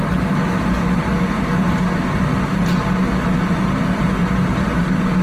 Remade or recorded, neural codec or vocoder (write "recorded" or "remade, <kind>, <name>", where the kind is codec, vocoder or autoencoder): remade, vocoder, BigVGAN v2